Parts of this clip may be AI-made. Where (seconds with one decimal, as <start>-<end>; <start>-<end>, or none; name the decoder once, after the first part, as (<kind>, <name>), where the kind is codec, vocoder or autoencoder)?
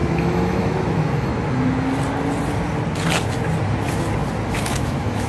0.0-1.3 (autoencoder, DAC-VAE); 4.5-5.3